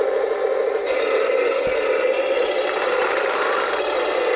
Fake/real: real